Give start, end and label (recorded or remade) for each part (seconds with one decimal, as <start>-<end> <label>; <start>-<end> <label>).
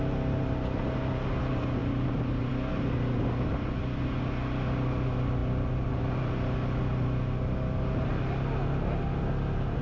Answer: 0.0-9.8 recorded